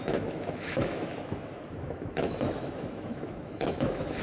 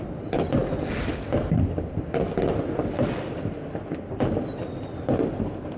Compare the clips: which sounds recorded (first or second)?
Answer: second